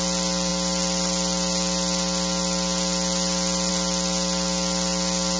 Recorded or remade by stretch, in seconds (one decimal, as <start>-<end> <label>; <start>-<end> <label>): 0.0-5.4 recorded